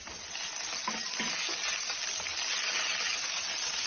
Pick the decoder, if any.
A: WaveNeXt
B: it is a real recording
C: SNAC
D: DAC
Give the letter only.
B